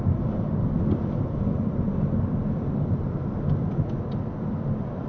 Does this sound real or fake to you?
real